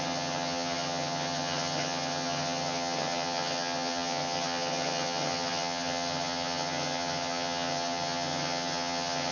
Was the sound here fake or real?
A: fake